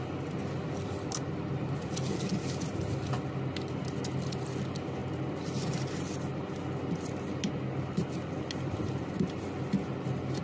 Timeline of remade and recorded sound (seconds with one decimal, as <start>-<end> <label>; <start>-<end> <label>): 0.0-10.4 recorded